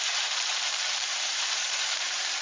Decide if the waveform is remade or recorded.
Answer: remade